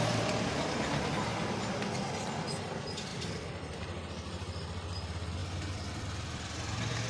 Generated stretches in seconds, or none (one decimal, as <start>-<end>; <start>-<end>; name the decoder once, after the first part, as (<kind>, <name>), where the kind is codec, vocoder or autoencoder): 3.1-3.8 (vocoder, BigVGAN v2); 5.4-7.1